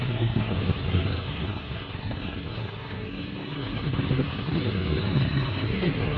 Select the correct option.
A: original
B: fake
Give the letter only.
B